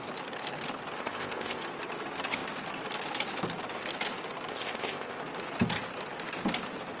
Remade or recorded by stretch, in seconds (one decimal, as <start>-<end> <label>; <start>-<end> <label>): 0.0-1.0 recorded; 1.0-1.6 remade; 1.6-4.5 recorded; 4.5-5.2 remade; 5.2-7.0 recorded